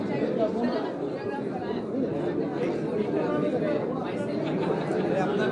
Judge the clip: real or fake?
real